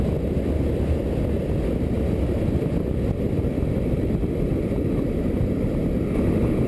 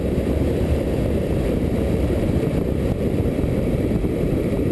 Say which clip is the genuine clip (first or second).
first